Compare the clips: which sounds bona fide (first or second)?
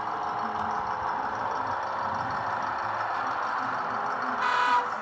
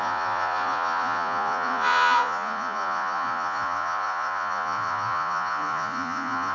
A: first